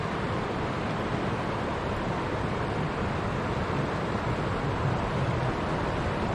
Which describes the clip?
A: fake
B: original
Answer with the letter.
B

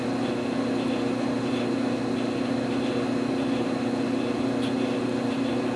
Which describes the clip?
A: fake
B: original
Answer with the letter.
B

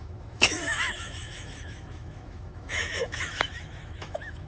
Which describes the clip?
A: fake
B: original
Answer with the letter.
A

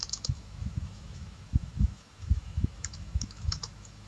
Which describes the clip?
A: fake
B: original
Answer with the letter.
A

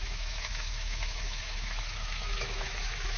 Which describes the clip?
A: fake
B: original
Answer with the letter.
A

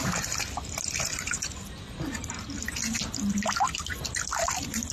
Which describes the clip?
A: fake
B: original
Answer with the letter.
B